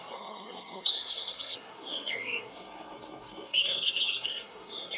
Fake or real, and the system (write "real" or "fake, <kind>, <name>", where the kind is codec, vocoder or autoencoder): fake, codec, SNAC